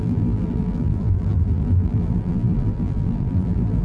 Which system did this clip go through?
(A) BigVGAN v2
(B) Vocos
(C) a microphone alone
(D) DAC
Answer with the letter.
A